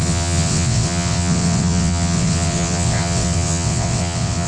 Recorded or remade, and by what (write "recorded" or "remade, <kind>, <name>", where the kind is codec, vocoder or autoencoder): remade, vocoder, WaveNeXt